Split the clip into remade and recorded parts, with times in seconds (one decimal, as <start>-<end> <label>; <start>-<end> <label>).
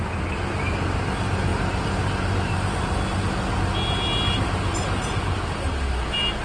0.0-6.4 recorded